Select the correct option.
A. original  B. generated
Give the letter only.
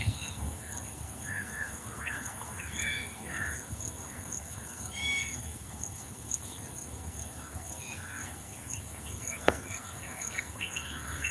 B